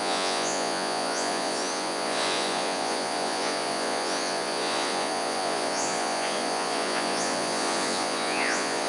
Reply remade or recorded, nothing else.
remade